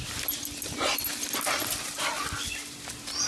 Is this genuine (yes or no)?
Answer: yes